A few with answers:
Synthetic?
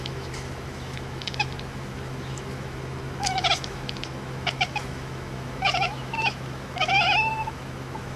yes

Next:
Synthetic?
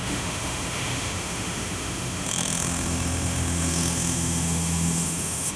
yes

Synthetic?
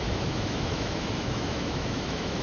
yes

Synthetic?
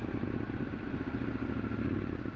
no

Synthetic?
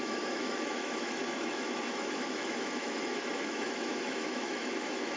yes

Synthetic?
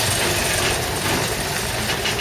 no